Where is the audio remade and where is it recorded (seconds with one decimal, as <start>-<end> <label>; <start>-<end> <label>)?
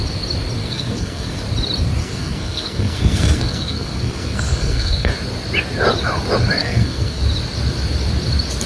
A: 0.0-0.6 recorded; 0.6-1.4 remade; 1.4-2.0 recorded; 2.0-5.1 remade; 5.1-6.6 recorded; 6.6-7.2 remade; 7.2-8.7 recorded